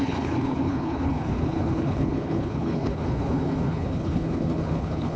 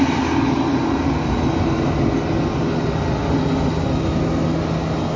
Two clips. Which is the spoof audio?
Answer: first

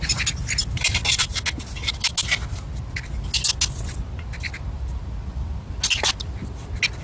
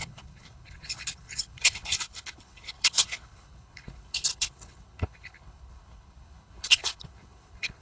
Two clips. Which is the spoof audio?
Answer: second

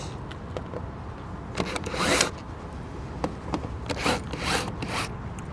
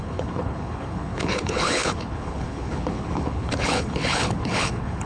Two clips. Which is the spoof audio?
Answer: second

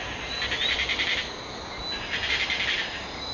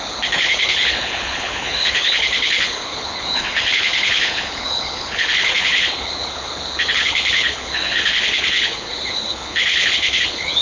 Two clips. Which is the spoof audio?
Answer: second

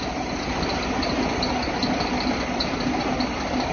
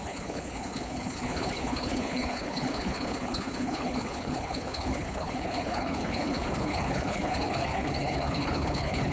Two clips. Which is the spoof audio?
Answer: second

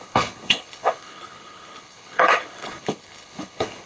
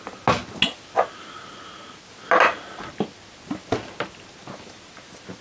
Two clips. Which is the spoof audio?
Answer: first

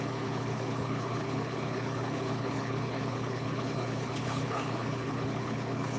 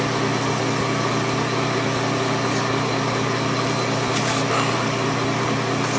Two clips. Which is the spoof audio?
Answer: first